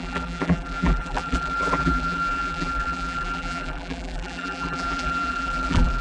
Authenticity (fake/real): fake